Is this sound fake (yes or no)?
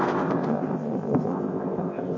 yes